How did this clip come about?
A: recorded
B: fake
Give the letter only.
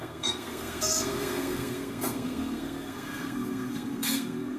B